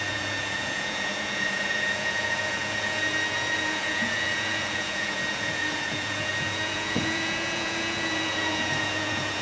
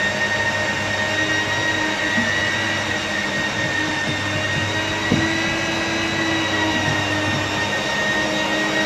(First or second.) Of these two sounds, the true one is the second